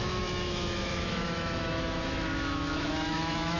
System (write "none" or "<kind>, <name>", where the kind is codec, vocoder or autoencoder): autoencoder, DAC-VAE